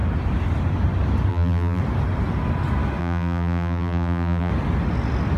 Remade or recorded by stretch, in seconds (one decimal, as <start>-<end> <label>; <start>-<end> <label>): 0.0-1.3 recorded; 1.3-1.8 remade; 1.8-3.0 recorded; 3.0-4.5 remade; 4.5-5.4 recorded